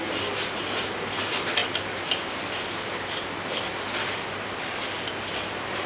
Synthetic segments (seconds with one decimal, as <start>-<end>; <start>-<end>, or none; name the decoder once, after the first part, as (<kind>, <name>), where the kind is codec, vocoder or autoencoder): none